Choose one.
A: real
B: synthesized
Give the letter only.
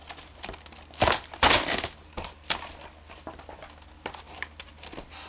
A